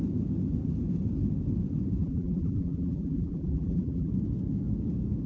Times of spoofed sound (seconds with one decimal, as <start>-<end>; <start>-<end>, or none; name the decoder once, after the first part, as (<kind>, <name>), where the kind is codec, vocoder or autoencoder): 2.0-4.1 (vocoder, BigVGAN v2)